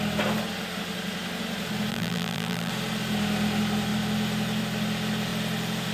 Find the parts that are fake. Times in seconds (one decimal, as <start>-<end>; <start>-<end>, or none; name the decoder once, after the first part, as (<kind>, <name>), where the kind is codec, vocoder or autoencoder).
1.9-2.7 (vocoder, BigVGAN v2)